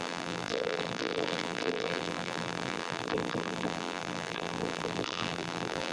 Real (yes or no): no